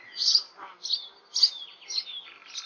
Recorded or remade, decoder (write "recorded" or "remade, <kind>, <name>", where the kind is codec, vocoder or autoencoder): recorded